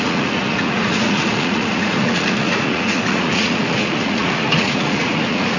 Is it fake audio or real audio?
fake